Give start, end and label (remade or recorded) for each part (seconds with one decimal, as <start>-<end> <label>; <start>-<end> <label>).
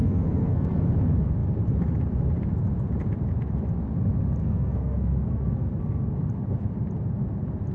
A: 0.0-0.8 remade; 0.8-4.4 recorded; 4.4-5.8 remade; 5.8-7.7 recorded